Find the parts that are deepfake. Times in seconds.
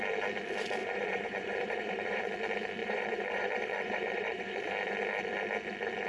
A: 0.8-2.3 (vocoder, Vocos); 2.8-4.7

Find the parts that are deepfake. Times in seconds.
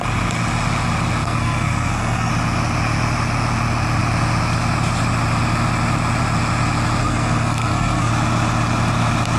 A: 1.2-2.3 (codec, SNAC); 7.0-8.1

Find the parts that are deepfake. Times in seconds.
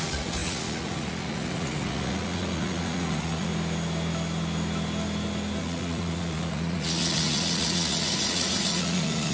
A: 0.0-3.5 (vocoder, Vocos); 5.6-9.3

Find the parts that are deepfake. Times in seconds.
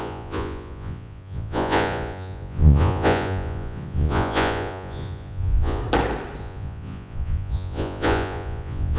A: 0.0-5.8 (vocoder, Vocos); 6.4-9.0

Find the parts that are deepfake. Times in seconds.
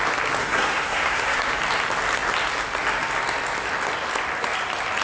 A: 0.4-1.5 (codec, SNAC)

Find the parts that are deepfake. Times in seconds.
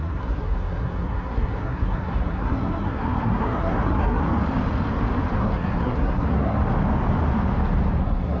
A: 0.0-4.2 (codec, SNAC); 5.4-6.6; 8.0-8.4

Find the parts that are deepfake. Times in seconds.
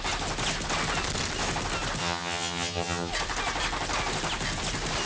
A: 2.0-3.1 (vocoder, HiFi-GAN)